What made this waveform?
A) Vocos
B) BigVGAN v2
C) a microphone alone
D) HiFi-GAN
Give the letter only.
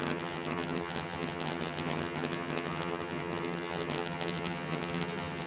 D